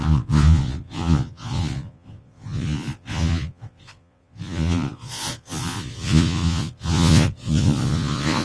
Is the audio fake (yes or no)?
yes